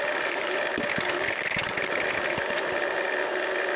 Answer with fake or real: real